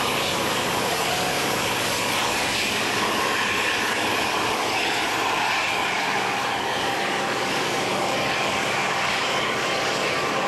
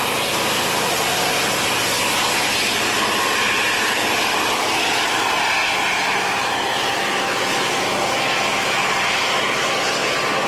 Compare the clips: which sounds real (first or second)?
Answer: second